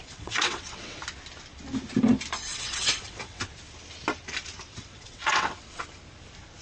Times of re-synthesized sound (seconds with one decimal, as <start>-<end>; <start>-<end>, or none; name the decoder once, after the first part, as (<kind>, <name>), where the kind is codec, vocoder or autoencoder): 0.0-1.0 (vocoder, WaveNeXt); 2.5-3.4; 4.7-5.8